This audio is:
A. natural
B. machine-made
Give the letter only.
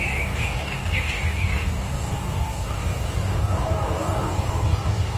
B